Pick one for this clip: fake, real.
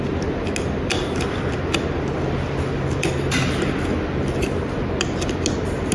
real